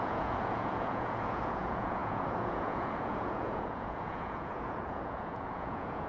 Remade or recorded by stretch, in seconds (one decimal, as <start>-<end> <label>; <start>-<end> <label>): 0.0-6.1 remade